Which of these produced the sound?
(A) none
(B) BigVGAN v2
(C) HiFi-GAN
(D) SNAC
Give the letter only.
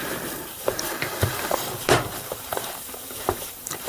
B